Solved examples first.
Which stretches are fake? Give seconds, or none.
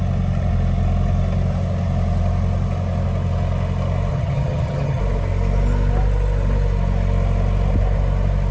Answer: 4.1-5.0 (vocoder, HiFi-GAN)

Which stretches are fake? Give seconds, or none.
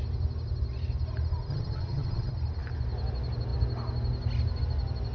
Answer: 1.5-2.3 (vocoder, HiFi-GAN)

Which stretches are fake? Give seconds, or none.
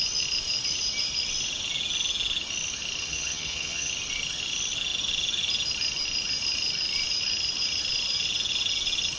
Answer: 3.0-3.9 (vocoder, HiFi-GAN)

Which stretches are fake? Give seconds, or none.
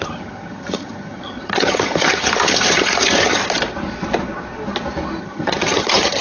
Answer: 0.0-3.4 (vocoder, HiFi-GAN); 5.2-6.2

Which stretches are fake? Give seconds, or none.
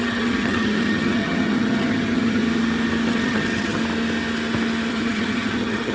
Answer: 0.0-2.4 (vocoder, HiFi-GAN); 3.1-3.8; 4.9-5.9